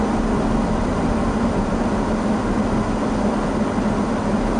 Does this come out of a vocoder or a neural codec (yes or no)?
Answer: no